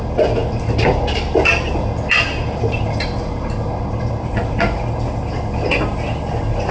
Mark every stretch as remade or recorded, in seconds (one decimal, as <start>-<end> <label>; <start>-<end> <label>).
0.0-6.7 recorded